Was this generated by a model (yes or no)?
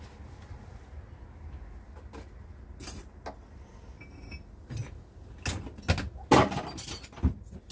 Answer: no